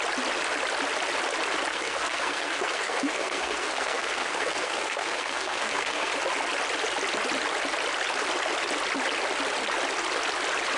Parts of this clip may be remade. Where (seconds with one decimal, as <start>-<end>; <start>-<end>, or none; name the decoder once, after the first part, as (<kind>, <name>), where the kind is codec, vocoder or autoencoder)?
1.7-6.1 (codec, SNAC)